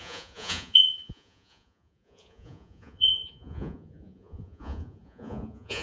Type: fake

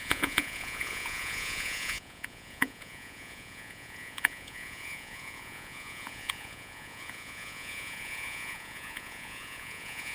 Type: fake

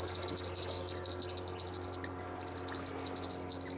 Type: real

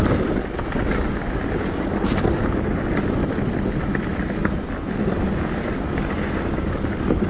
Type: real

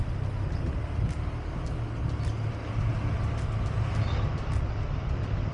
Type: real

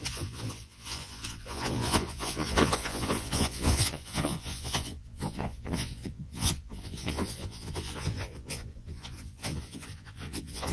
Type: fake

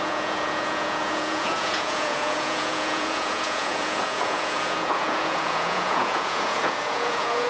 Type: fake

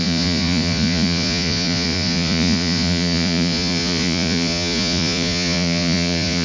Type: fake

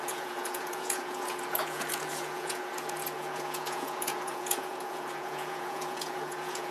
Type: fake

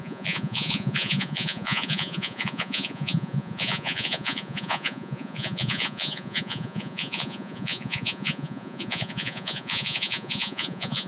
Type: fake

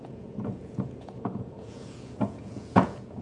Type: fake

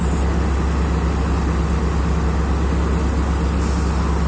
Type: real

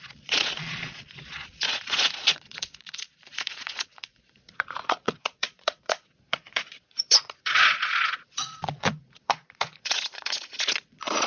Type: fake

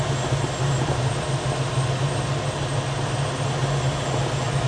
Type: real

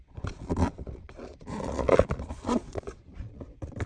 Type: fake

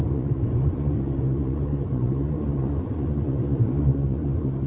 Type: fake